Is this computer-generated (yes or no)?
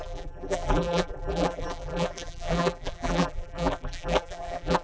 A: yes